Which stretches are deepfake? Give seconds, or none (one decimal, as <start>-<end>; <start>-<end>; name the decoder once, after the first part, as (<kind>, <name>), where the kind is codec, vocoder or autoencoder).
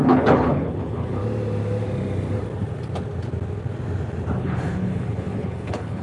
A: 0.0-1.2 (codec, HILCodec); 4.4-6.0